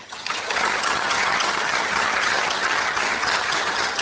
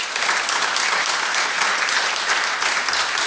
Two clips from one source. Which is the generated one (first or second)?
first